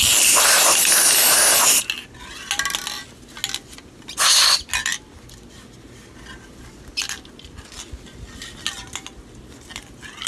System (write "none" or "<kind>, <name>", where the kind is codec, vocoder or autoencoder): none